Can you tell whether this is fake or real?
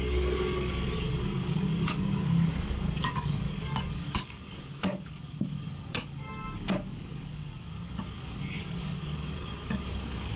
fake